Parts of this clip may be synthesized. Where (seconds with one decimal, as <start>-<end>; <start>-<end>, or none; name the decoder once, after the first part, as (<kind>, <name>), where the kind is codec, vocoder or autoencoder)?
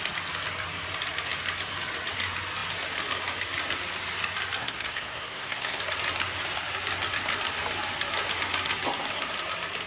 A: 4.6-5.8 (codec, SNAC)